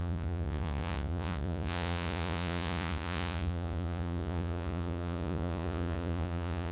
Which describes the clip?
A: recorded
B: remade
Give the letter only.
B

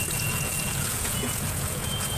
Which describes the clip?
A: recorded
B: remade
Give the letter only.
B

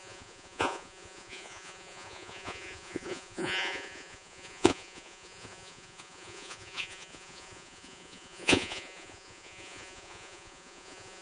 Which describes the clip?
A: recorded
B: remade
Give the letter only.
B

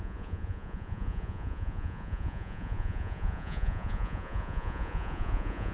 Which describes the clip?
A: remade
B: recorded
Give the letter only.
A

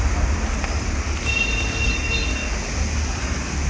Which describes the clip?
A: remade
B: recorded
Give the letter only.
B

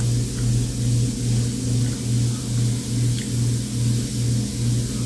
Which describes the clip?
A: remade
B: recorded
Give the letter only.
B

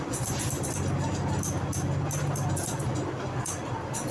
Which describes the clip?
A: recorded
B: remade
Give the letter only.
A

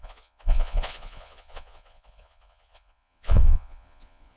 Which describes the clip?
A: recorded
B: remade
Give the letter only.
B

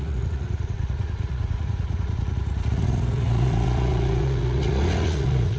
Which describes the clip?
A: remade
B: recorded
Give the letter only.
A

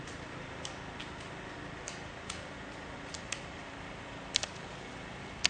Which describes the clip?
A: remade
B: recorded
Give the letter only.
B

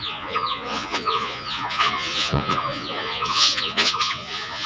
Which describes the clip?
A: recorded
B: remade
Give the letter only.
B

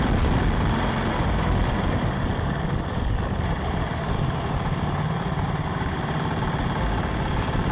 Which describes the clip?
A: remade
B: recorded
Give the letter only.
B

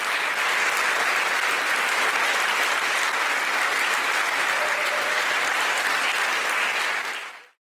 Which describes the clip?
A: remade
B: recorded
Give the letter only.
B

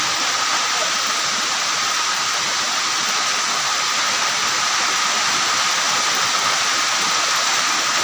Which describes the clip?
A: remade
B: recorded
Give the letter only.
B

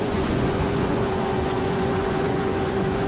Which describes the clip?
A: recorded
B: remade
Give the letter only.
B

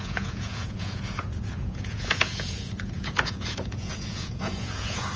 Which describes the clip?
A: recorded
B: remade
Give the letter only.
B